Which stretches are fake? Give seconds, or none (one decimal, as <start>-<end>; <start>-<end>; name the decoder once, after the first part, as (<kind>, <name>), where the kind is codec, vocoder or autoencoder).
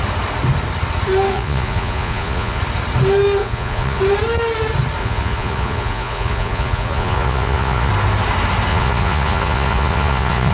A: 1.3-2.6 (vocoder, Vocos); 3.4-4.0; 5.0-7.9; 8.7-10.5